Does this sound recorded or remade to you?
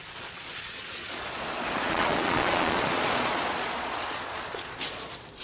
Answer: remade